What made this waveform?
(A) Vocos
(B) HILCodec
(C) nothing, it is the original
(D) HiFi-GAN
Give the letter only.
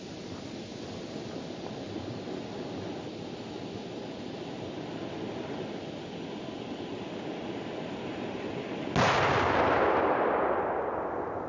C